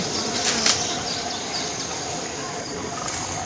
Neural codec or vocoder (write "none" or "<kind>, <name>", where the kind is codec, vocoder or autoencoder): none